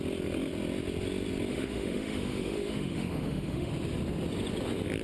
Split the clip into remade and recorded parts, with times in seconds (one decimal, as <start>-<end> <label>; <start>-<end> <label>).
0.0-1.5 recorded; 1.5-3.7 remade; 3.7-5.0 recorded